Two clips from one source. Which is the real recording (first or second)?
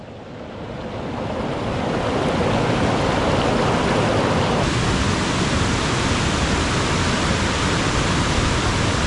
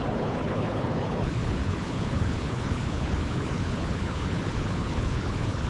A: first